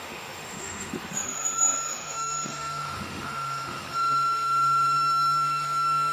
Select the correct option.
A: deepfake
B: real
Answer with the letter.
A